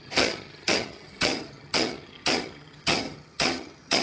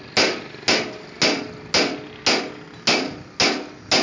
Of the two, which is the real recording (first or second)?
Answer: second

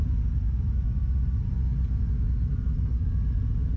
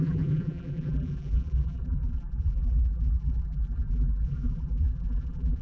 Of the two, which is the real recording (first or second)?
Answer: first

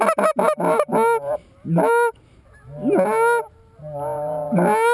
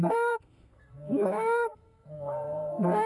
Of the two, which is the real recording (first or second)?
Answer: first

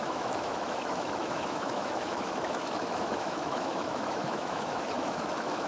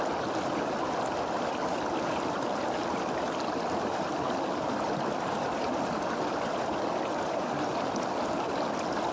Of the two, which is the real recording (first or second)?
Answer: second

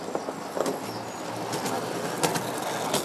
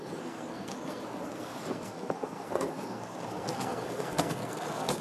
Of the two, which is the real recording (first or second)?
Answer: first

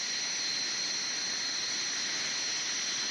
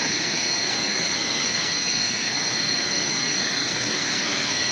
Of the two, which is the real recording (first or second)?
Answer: first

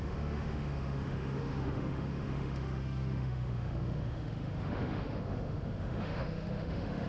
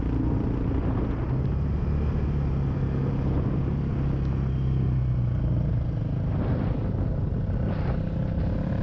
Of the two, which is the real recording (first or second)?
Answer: second